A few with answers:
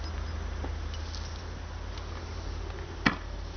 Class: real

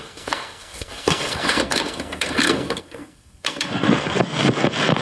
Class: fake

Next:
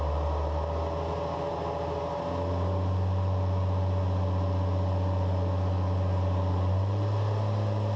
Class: real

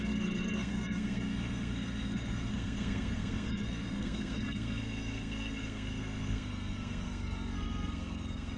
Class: fake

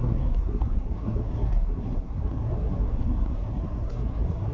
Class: fake